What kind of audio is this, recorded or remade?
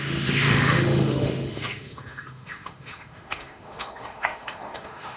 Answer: remade